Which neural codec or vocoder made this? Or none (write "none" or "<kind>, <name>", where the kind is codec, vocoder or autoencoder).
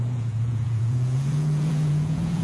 vocoder, Vocos